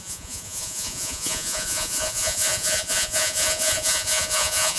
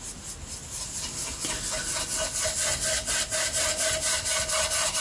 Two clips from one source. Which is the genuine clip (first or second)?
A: second